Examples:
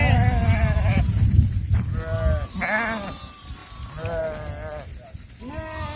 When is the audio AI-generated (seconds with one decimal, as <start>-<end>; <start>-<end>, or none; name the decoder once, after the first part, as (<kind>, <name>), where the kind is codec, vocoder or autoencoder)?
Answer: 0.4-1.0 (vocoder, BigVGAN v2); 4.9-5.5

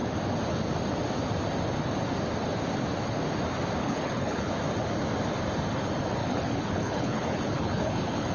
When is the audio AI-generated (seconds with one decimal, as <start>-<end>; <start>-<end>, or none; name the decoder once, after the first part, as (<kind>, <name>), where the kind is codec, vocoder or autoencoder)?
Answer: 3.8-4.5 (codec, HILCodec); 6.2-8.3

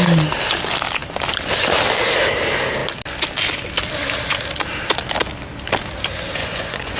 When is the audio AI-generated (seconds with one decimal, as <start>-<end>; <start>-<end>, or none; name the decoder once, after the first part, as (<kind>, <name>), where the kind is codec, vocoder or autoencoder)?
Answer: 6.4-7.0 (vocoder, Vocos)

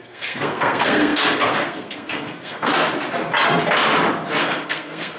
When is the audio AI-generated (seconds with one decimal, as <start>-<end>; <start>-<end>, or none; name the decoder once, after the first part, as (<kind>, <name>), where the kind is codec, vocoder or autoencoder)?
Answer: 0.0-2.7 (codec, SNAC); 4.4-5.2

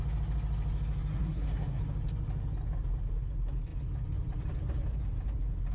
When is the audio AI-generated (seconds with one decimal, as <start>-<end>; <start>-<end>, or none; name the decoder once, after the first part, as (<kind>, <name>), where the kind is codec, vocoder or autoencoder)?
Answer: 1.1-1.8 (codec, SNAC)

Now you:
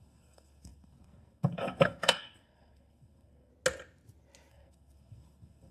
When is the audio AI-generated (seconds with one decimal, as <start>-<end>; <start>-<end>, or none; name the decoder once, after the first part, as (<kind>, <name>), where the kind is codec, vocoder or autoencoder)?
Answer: 0.0-3.5 (codec, SNAC); 4.5-5.7

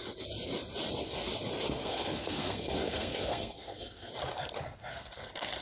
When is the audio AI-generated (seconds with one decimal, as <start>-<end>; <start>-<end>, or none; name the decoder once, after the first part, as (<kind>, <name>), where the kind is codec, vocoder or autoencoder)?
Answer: 1.8-4.1 (codec, SNAC); 4.9-5.6